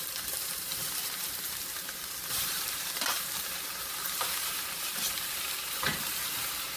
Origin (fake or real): fake